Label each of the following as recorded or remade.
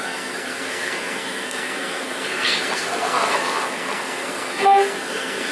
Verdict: remade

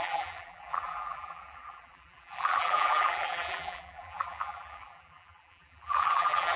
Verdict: remade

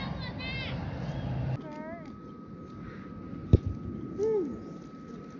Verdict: recorded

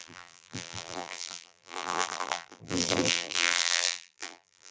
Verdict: remade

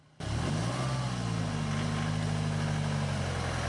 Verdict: recorded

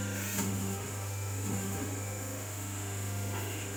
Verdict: remade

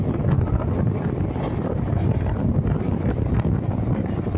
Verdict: recorded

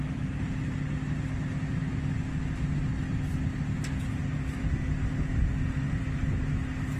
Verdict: recorded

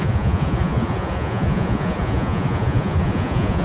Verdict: remade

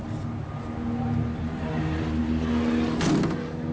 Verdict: recorded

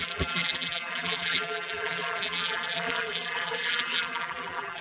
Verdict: remade